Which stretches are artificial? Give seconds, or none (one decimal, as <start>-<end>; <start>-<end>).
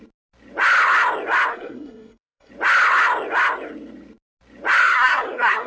1.5-2.5; 4.8-5.7